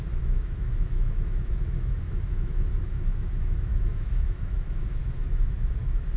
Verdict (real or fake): fake